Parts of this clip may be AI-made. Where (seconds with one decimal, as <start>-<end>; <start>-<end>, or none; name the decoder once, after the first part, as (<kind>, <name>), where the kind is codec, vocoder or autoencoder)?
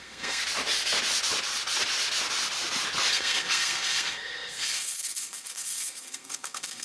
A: 0.0-0.4 (codec, SNAC); 3.1-6.8